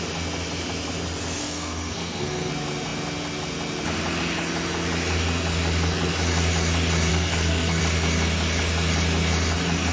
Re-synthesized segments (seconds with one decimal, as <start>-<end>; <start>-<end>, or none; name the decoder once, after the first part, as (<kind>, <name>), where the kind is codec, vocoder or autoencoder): 1.4-2.5 (codec, SNAC); 7.1-7.8